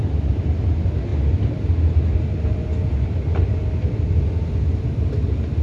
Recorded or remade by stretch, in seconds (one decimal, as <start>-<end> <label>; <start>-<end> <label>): 0.0-5.6 recorded